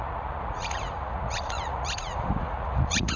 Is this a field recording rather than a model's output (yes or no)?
no